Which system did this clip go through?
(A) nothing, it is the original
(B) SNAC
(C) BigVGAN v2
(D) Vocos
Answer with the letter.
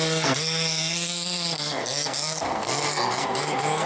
B